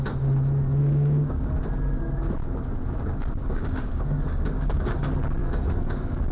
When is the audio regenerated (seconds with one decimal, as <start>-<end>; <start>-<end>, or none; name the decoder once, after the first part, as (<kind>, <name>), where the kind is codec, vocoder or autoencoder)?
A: 0.8-1.4 (codec, DAC); 3.4-5.0; 5.4-6.3